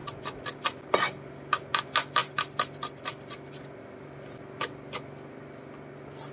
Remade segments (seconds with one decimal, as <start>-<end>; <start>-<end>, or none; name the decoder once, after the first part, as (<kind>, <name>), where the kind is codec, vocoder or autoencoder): 0.0-0.6 (vocoder, BigVGAN v2); 2.2-3.8